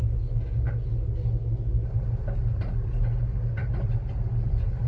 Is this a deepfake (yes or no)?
no